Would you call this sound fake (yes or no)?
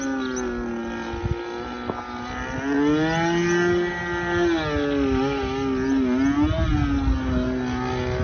no